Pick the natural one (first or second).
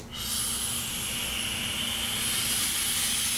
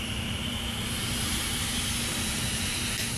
first